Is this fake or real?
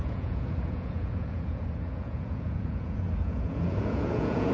fake